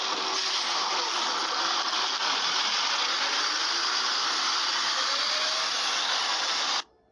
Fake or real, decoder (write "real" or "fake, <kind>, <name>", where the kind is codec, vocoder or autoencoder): real